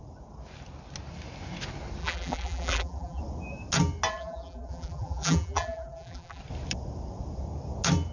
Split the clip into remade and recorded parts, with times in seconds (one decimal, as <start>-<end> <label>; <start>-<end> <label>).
0.0-2.0 recorded; 2.0-3.2 remade; 3.2-4.1 recorded; 4.1-6.4 remade; 6.4-8.1 recorded